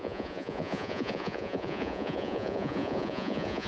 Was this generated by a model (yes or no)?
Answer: yes